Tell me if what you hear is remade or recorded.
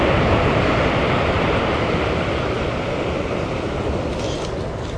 recorded